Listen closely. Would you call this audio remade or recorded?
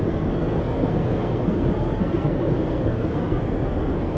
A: remade